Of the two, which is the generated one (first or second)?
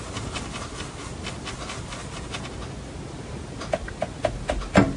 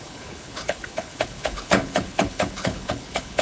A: second